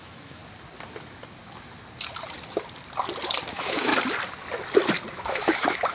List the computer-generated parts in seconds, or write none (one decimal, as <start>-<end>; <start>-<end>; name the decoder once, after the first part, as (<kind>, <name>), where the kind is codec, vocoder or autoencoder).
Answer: 0.0-0.4 (autoencoder, DAC-VAE); 3.5-3.9; 5.1-5.9